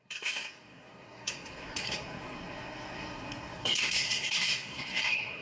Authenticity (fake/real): fake